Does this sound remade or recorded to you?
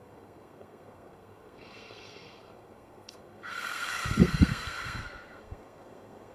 remade